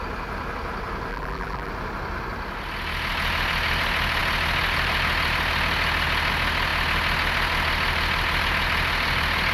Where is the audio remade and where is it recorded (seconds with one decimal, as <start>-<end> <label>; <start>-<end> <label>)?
0.0-1.1 recorded; 1.1-1.7 remade; 1.7-9.5 recorded